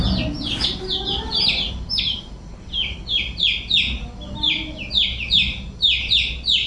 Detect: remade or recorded recorded